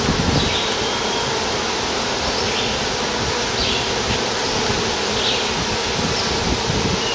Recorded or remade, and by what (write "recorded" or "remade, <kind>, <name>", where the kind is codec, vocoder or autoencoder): recorded